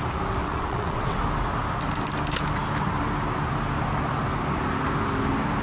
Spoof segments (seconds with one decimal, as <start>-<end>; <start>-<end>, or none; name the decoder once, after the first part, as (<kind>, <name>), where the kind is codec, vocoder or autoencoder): 0.4-1.2 (vocoder, WaveNeXt)